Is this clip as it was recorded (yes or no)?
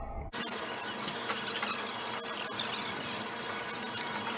yes